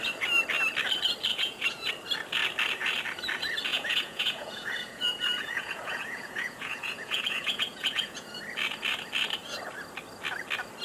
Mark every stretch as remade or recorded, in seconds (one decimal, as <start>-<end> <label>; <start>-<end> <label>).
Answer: 0.0-1.3 recorded; 1.3-1.9 remade; 1.9-3.7 recorded; 3.7-8.4 remade; 8.4-10.8 recorded